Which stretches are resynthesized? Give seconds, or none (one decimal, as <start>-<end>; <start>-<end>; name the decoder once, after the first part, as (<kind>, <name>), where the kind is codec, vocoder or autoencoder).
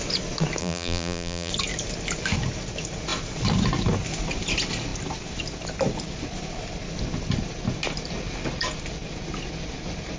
0.6-1.5 (vocoder, BigVGAN v2)